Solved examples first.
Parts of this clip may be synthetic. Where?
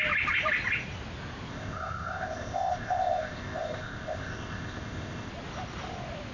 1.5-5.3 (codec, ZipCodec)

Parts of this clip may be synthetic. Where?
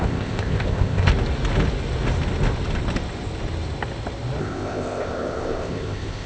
0.0-1.1 (codec, ZipCodec); 4.4-6.3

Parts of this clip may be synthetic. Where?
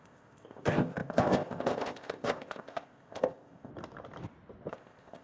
0.0-3.7 (codec, ZipCodec); 4.7-5.2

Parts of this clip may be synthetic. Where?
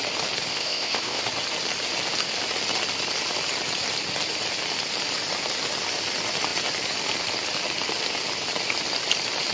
0.5-1.2 (codec, ZipCodec)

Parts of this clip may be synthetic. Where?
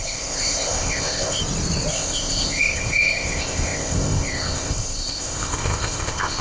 0.0-1.4 (codec, ZipCodec); 1.9-6.4